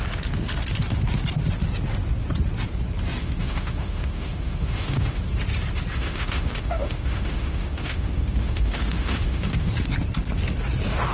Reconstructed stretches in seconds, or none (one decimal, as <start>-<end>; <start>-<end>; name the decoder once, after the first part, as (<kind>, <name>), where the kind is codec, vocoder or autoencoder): 3.2-5.2 (autoencoder, DAC-VAE); 5.9-9.7